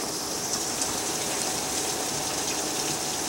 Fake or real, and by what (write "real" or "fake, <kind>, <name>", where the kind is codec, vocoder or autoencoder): real